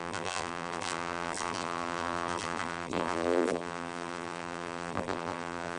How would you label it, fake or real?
fake